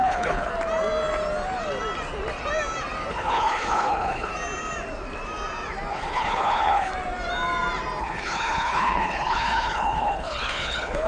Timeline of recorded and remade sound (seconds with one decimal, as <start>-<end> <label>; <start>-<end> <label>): 0.0-0.5 remade; 0.5-3.1 recorded; 3.1-4.3 remade; 4.3-5.9 recorded; 5.9-6.9 remade; 6.9-8.0 recorded; 8.0-11.1 remade